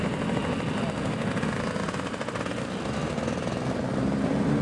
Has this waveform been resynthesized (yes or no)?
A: no